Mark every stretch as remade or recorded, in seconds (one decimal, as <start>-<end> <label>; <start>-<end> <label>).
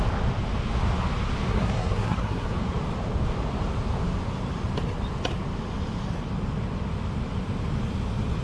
0.0-1.5 recorded; 1.5-2.5 remade; 2.5-8.4 recorded